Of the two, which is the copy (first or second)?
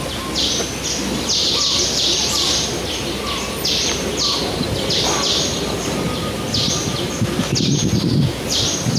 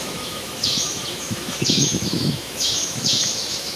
second